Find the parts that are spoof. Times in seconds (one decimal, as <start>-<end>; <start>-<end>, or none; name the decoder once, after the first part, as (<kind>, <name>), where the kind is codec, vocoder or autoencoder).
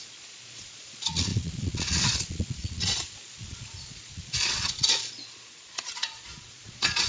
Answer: 0.0-7.1 (vocoder, Vocos)